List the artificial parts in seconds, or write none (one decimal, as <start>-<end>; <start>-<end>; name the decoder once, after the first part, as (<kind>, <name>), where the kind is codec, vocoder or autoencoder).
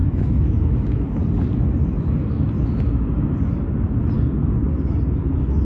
0.0-1.2 (autoencoder, DAC-VAE)